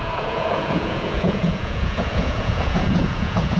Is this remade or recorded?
remade